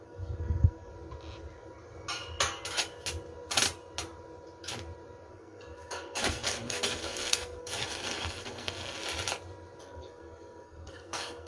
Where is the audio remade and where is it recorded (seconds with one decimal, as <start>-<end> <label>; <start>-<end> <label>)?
0.0-0.9 remade; 0.9-5.3 recorded; 5.3-9.0 remade; 9.0-9.8 recorded; 9.8-11.5 remade